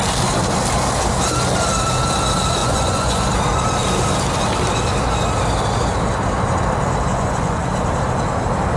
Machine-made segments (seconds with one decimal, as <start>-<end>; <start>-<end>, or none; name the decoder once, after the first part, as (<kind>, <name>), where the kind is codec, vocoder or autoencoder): 2.6-3.2 (vocoder, Vocos); 7.1-7.7